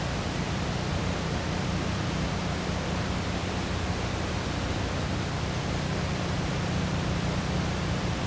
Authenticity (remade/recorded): remade